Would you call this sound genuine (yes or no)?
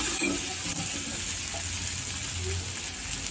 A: yes